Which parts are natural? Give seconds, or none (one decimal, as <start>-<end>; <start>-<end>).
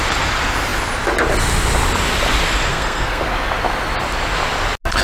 0.0-2.7; 3.2-5.0